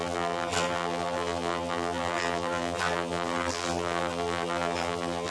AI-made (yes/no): yes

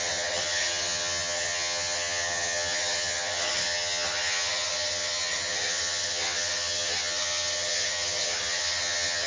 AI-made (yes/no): yes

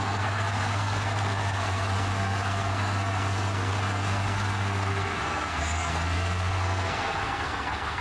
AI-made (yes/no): yes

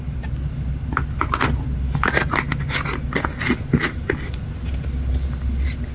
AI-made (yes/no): no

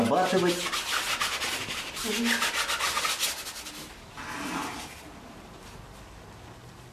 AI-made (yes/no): no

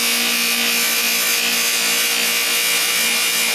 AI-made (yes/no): no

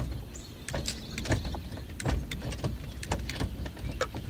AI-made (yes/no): no